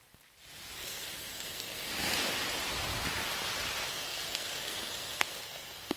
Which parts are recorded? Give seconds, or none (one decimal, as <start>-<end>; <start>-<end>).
0.0-0.8; 1.9-3.9